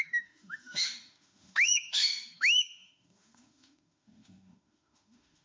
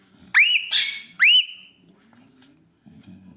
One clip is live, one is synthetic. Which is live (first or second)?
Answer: second